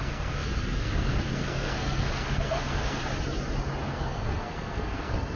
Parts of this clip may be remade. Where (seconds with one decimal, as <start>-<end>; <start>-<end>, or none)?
0.0-3.0; 3.9-5.4